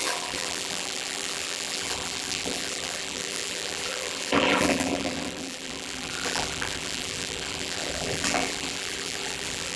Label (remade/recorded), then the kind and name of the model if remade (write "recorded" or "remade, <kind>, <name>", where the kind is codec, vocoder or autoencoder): remade, vocoder, BigVGAN v2